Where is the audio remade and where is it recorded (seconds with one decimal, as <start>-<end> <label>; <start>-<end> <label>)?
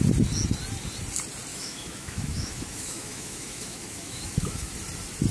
0.0-1.5 recorded; 1.5-4.7 remade; 4.7-5.3 recorded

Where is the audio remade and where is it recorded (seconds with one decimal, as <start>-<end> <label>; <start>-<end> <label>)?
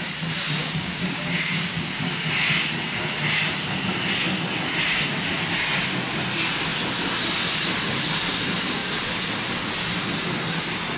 0.0-0.6 recorded; 0.6-1.8 remade; 1.8-11.0 recorded